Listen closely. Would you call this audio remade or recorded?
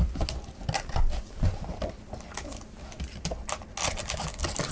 recorded